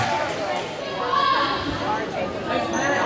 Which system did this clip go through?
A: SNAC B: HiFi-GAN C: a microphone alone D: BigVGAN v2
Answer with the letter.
C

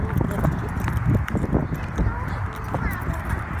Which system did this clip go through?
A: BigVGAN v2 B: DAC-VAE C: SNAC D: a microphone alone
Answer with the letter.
D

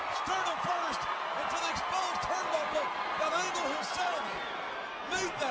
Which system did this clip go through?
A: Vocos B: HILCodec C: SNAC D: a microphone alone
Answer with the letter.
D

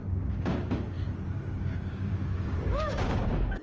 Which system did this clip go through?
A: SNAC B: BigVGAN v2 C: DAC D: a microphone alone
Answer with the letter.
C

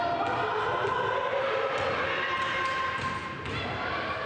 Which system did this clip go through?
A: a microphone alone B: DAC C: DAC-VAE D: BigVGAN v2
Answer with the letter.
A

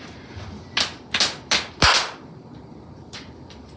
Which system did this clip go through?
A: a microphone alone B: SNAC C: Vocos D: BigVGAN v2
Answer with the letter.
A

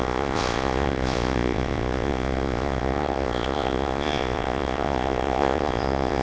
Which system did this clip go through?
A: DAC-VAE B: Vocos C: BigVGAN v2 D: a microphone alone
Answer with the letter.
B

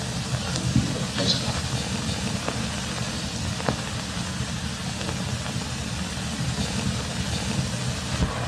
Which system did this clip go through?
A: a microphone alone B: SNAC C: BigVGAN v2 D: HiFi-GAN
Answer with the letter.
A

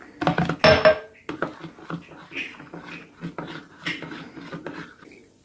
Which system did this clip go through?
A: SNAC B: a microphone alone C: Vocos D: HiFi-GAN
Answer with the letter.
B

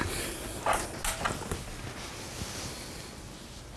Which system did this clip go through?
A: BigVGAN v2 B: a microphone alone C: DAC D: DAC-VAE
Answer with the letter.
B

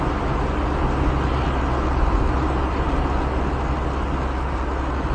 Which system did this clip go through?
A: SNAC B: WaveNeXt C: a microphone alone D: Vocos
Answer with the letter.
C